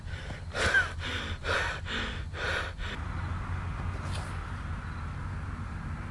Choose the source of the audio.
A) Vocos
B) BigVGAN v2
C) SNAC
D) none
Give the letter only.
D